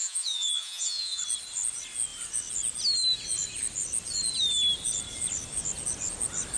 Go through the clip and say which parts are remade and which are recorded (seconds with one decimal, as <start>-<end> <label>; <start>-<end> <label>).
0.0-1.2 remade; 1.2-6.6 recorded